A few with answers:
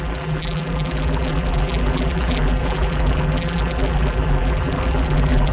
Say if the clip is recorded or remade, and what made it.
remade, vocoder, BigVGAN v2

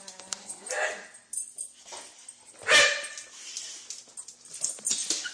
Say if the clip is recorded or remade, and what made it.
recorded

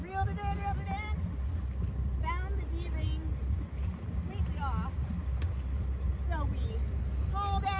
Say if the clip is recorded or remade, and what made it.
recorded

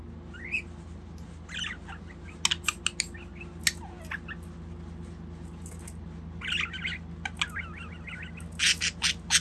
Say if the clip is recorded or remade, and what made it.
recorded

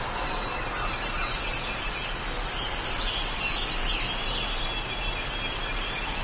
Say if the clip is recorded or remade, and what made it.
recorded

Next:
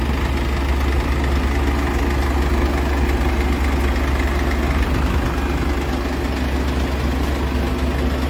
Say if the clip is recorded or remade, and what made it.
recorded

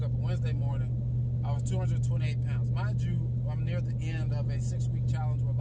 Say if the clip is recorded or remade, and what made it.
recorded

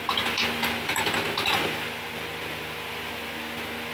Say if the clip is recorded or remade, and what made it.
recorded